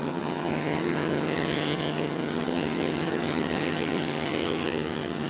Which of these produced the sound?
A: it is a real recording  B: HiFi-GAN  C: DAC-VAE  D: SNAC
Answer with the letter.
B